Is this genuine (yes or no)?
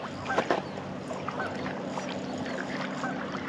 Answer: yes